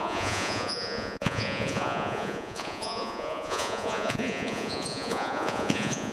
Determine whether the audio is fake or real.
fake